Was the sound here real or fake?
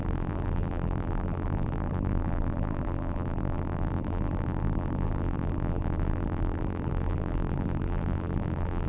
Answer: fake